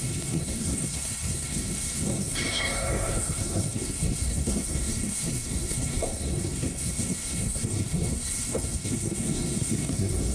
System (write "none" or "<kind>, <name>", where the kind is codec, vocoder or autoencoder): codec, SNAC